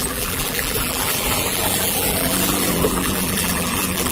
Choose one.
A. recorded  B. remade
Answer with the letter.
B